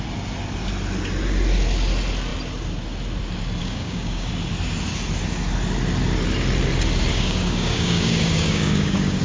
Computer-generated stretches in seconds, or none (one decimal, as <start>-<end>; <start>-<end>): 3.6-4.3; 7.1-9.2